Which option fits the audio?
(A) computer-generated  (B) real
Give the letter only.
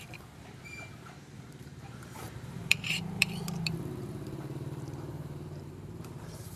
A